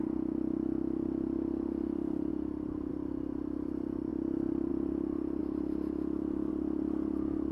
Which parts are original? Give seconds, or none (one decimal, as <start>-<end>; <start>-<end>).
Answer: 0.0-7.5